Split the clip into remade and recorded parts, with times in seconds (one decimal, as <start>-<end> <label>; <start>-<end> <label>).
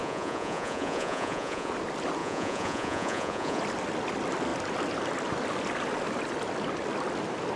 0.0-1.7 remade; 1.7-2.2 recorded; 2.2-3.6 remade; 3.6-7.6 recorded